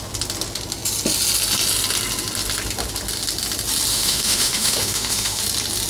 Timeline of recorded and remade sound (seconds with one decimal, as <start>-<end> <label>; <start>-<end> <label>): 0.0-3.9 recorded; 3.9-5.4 remade; 5.4-5.9 recorded